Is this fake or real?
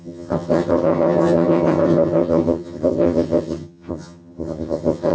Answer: fake